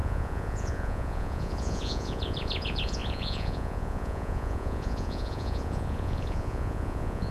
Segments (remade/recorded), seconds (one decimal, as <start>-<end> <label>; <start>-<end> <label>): 0.0-7.3 remade